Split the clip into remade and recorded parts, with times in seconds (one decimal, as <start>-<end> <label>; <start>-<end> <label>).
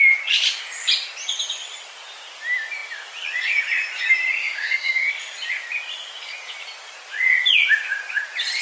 0.0-4.4 recorded; 4.4-5.1 remade; 5.1-8.6 recorded